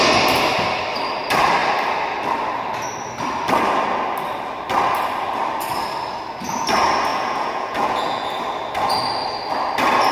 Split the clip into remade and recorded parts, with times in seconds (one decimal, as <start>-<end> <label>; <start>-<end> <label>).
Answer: 0.0-7.1 recorded; 7.1-8.3 remade; 8.3-10.1 recorded